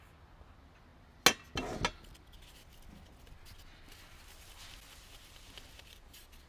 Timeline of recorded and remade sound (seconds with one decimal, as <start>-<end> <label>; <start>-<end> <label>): 0.0-6.5 recorded